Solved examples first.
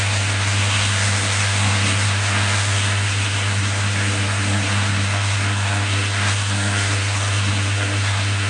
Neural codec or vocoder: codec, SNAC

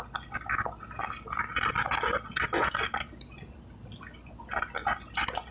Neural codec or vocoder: none